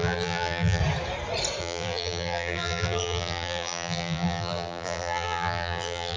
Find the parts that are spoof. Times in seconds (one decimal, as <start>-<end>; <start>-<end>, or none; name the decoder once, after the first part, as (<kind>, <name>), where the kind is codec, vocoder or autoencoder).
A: 0.0-0.8 (vocoder, BigVGAN v2); 1.6-6.2